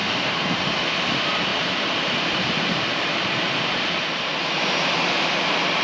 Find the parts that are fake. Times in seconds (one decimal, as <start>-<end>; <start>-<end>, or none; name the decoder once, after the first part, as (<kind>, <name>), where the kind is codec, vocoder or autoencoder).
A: 1.5-4.4 (vocoder, BigVGAN v2)